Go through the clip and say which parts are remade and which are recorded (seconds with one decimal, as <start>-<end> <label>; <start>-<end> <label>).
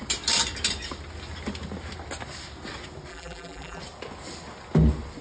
0.0-3.1 recorded; 3.1-3.8 remade; 3.8-5.2 recorded